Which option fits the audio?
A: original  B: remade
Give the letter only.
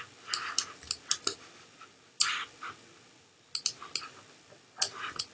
A